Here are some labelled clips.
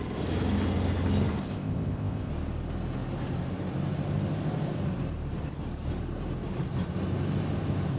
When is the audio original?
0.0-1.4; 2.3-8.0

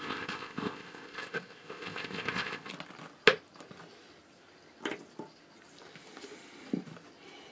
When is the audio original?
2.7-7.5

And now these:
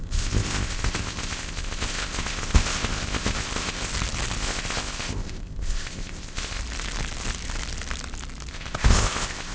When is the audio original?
3.9-4.4; 6.6-8.5